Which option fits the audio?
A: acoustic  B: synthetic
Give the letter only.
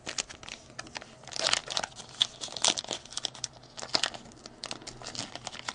A